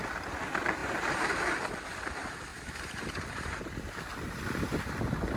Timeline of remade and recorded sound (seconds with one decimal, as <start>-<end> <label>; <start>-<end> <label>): 0.0-0.8 recorded; 0.8-1.3 remade; 1.3-2.5 recorded; 2.5-3.6 remade; 3.6-5.4 recorded